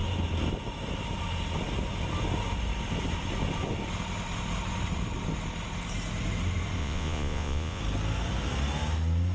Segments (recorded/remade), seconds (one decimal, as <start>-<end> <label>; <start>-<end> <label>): 0.0-6.8 recorded; 6.8-7.8 remade; 7.8-9.3 recorded